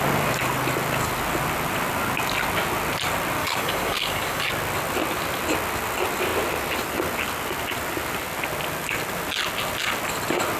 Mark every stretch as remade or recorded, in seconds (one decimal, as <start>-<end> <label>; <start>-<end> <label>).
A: 0.0-3.4 recorded; 3.4-4.5 remade; 4.5-10.6 recorded